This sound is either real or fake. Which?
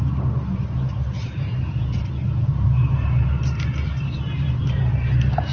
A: real